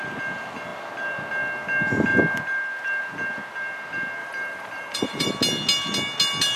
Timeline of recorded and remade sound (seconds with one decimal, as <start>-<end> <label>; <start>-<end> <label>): 0.0-4.2 recorded; 4.2-5.3 remade; 5.3-6.6 recorded